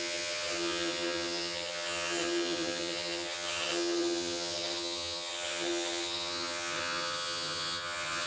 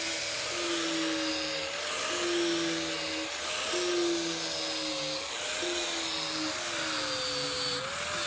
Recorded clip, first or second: second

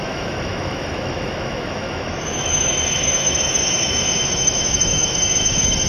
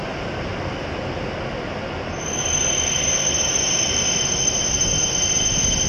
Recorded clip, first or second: second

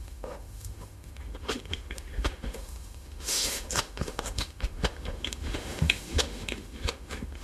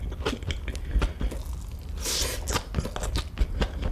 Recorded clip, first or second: second